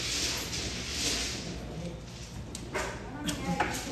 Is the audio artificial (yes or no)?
no